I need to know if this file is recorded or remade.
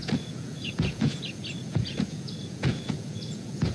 remade